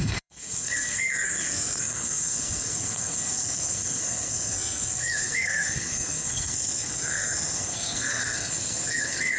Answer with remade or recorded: remade